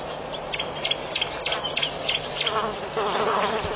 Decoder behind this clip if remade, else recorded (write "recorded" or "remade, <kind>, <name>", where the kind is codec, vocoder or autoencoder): recorded